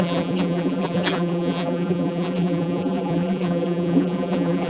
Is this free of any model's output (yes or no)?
no